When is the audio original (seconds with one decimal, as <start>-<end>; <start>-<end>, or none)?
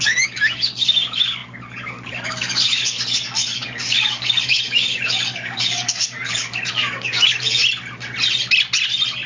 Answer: 7.6-9.3